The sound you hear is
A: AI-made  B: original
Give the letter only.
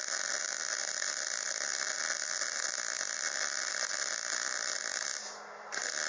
B